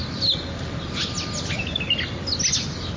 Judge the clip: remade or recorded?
recorded